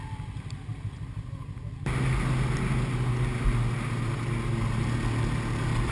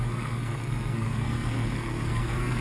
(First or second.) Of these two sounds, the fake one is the second